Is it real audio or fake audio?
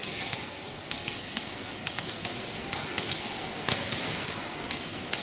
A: fake